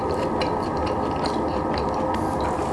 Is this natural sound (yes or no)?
no